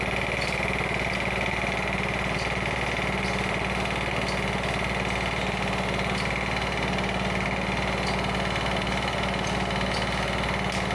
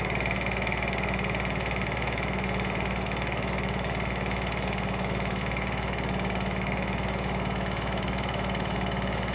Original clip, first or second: first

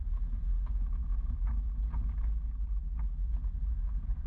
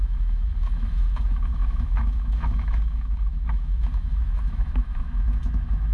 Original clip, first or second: first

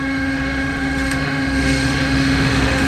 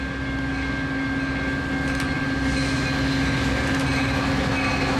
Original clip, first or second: second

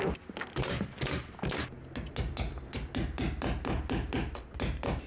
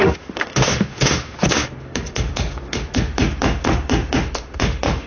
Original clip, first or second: first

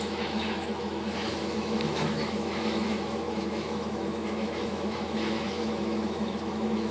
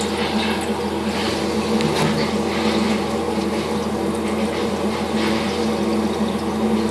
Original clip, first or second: second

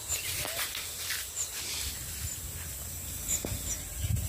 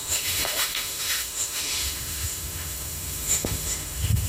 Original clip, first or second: first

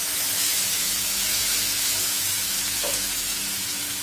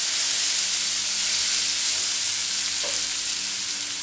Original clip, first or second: second